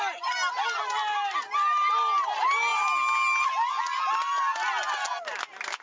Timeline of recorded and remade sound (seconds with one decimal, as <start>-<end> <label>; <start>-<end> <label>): 0.0-5.8 recorded